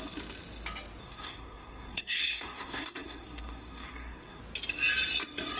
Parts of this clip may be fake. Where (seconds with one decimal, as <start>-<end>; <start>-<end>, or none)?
1.0-4.4